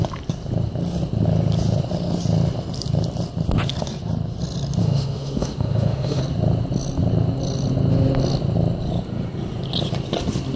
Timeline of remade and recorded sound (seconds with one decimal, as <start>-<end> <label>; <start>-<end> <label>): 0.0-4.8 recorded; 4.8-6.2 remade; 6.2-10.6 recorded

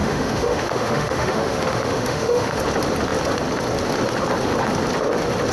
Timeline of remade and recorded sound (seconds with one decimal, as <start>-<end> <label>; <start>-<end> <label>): 0.0-2.6 remade; 2.6-5.5 recorded

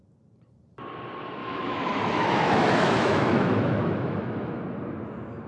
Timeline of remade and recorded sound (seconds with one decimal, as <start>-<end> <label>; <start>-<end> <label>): 0.0-1.4 recorded; 1.4-4.6 remade; 4.6-5.5 recorded

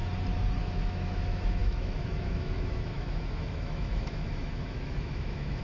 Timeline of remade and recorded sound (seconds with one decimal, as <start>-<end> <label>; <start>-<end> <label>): 0.0-0.6 recorded; 0.6-5.6 remade

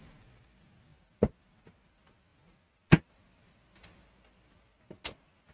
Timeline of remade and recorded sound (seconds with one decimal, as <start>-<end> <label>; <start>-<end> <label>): 0.0-5.5 recorded

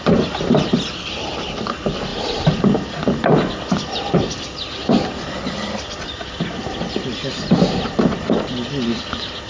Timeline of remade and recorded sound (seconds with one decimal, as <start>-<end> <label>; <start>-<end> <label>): 0.0-9.5 recorded